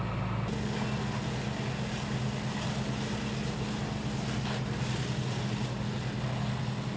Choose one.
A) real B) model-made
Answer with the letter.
A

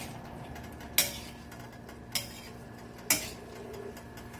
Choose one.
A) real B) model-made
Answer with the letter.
A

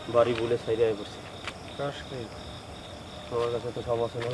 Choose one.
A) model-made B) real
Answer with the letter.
B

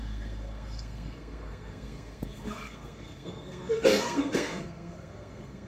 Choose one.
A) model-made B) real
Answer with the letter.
A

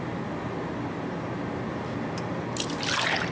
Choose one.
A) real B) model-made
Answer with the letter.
A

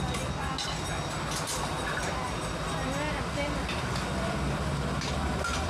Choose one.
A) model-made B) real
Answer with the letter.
B